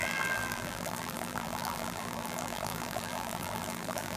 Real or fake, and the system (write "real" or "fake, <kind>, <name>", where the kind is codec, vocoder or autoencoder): fake, vocoder, BigVGAN v2